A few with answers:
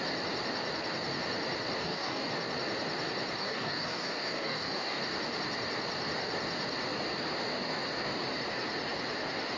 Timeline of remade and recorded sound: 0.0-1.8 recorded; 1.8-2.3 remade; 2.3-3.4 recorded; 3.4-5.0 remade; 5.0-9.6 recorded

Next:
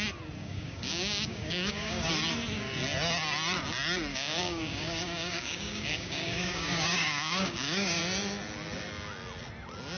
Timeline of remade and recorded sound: 0.0-0.4 recorded; 0.4-2.1 remade; 2.1-4.1 recorded; 4.1-8.0 remade; 8.0-10.0 recorded

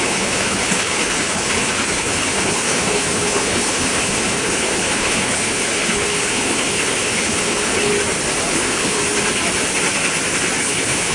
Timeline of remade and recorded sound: 0.0-7.9 remade; 7.9-8.5 recorded; 8.5-9.0 remade; 9.0-10.6 recorded; 10.6-11.1 remade

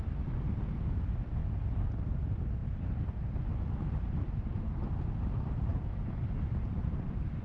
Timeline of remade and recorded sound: 0.0-1.4 remade; 1.4-1.9 recorded; 1.9-2.6 remade; 2.6-5.2 recorded; 5.2-5.7 remade; 5.7-6.8 recorded; 6.8-7.4 remade

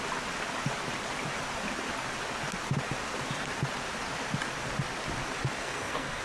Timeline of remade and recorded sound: 0.0-5.6 recorded; 5.6-6.2 remade

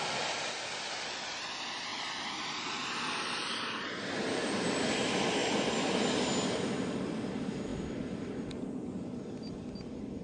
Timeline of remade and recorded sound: 0.0-1.9 remade; 1.9-2.9 recorded; 2.9-5.4 remade; 5.4-7.0 recorded; 7.0-10.2 remade